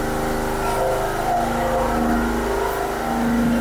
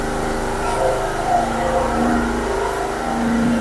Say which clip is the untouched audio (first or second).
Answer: first